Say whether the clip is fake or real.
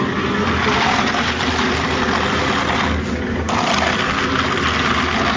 real